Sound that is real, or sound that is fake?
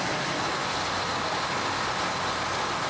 real